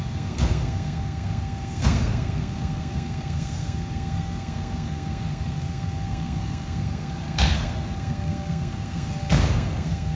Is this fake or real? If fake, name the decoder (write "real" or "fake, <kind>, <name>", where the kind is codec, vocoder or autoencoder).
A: fake, codec, SNAC